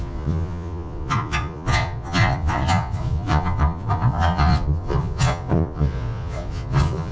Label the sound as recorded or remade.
remade